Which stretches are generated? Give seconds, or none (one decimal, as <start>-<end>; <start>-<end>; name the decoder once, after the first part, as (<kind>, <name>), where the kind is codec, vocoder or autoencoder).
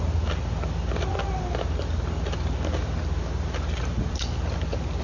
none